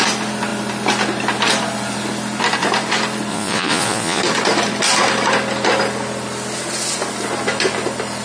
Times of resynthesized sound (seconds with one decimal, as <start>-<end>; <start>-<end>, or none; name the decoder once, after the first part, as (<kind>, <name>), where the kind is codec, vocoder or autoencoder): 3.3-4.2 (vocoder, Vocos)